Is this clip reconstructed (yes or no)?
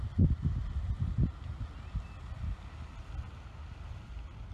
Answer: no